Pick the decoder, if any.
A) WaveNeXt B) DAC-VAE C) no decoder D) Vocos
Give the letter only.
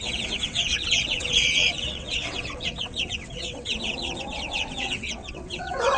A